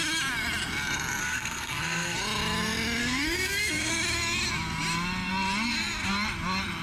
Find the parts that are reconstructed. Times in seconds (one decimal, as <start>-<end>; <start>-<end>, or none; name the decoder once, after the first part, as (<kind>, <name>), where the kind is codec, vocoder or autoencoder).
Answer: 1.2-2.2 (codec, SNAC); 3.0-3.9